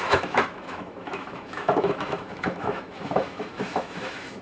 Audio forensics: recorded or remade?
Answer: remade